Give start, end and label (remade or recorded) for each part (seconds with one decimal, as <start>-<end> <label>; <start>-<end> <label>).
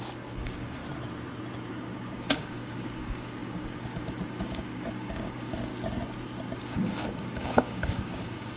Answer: 0.0-0.8 remade; 0.8-1.7 recorded; 1.7-5.7 remade; 5.7-6.6 recorded; 6.6-8.6 remade